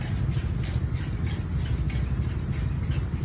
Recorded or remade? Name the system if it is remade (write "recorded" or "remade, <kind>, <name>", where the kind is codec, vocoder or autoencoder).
recorded